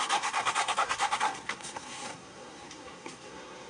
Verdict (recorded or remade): remade